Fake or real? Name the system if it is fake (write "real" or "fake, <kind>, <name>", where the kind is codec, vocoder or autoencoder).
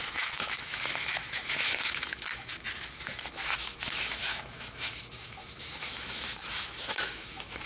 fake, autoencoder, DAC-VAE